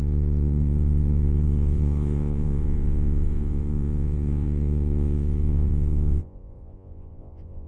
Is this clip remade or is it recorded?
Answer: remade